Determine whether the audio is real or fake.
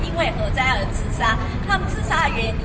real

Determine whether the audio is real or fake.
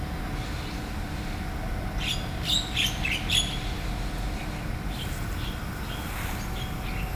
real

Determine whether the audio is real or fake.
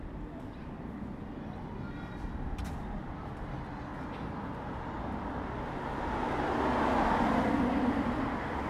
real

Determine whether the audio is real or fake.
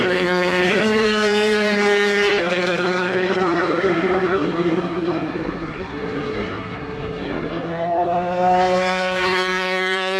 fake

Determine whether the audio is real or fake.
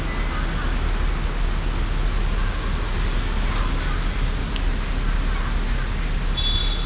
real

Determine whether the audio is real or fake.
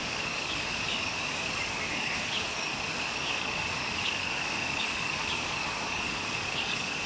fake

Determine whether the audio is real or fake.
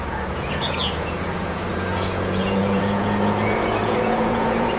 fake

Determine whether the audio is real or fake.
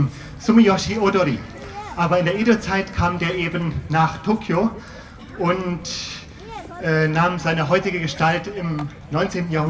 real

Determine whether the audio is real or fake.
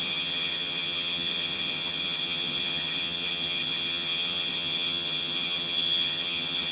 fake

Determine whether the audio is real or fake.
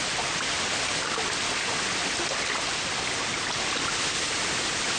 real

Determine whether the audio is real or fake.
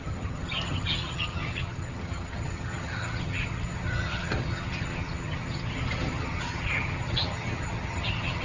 fake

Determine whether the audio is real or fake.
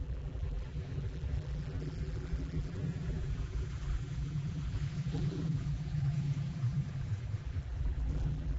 fake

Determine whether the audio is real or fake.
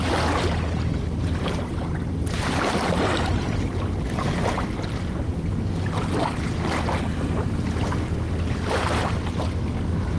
real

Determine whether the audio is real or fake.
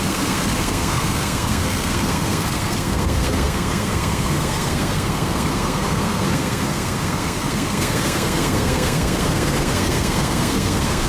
fake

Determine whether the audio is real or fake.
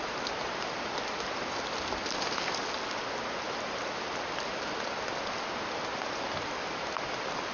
real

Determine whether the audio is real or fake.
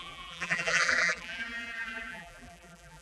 fake